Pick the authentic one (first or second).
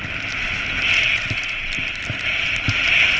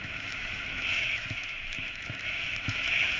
first